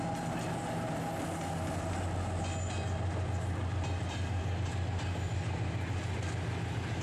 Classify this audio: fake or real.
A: real